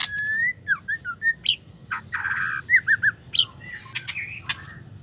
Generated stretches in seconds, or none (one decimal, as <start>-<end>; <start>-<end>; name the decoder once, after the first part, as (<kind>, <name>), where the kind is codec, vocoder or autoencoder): 3.7-4.4 (vocoder, WaveNeXt)